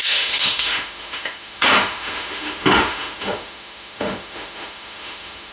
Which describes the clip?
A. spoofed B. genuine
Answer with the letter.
A